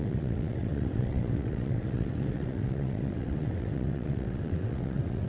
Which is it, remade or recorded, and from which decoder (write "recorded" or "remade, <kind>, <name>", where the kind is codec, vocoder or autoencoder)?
remade, vocoder, WaveNeXt